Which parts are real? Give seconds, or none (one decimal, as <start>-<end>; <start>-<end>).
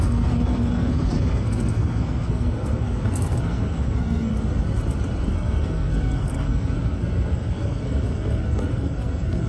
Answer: 4.3-5.2